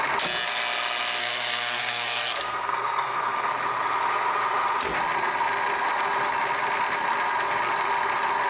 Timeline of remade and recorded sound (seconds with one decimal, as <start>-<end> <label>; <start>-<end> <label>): 0.0-1.2 recorded; 1.2-3.5 remade; 3.5-8.5 recorded